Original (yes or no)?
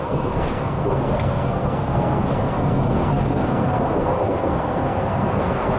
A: no